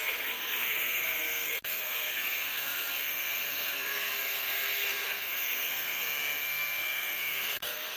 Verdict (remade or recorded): remade